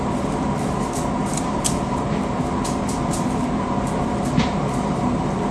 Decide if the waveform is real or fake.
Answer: fake